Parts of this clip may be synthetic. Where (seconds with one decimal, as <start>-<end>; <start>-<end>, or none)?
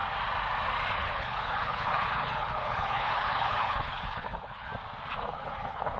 0.9-4.7; 5.2-6.0